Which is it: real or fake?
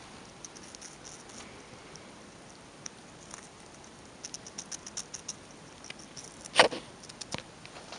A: real